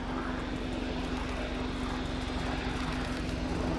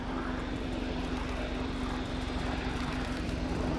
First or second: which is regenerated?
second